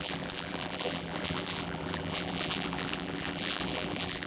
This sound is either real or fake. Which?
fake